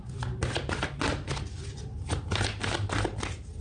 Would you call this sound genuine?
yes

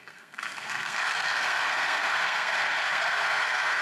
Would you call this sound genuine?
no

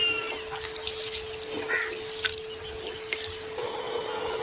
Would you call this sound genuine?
yes